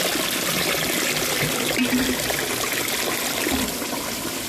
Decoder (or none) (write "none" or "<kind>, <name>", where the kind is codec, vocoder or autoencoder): none